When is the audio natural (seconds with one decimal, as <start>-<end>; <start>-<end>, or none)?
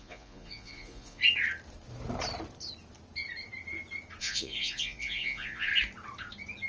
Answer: 1.2-4.2; 5.7-6.7